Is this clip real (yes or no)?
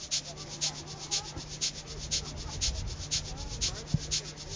yes